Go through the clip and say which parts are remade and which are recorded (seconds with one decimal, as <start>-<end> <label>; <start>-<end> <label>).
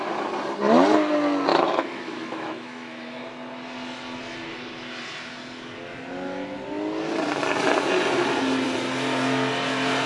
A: 0.0-1.5 recorded; 1.5-3.2 remade; 3.2-10.1 recorded